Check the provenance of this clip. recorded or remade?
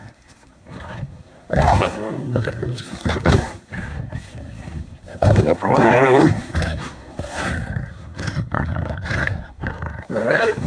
remade